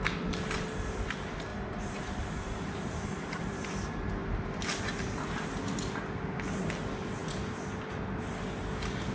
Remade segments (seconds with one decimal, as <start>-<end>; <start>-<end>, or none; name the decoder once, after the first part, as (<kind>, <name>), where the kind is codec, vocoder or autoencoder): 1.5-3.7 (vocoder, BigVGAN v2)